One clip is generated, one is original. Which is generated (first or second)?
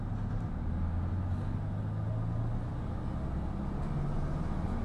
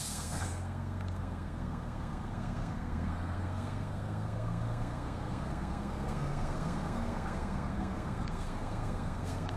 second